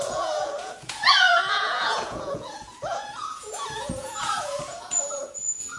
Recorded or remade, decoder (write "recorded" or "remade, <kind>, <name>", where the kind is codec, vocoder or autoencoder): remade, vocoder, Vocos